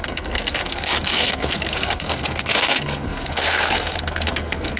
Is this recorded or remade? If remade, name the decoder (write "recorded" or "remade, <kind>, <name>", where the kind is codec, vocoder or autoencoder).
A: remade, codec, SNAC